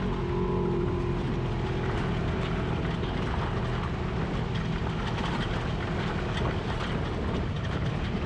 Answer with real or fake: real